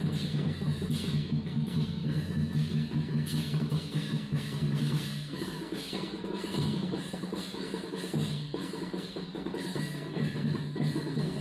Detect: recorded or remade remade